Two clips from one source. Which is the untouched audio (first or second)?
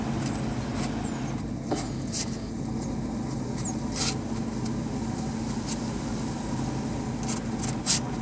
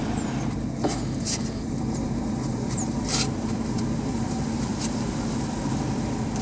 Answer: first